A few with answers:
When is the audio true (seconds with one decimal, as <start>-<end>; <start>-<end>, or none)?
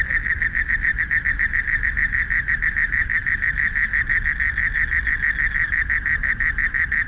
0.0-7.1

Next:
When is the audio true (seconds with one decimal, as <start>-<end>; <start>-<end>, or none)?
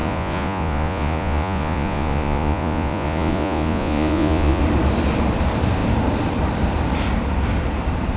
4.6-8.2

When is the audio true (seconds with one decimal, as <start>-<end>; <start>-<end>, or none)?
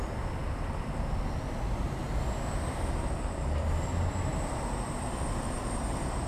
0.0-6.3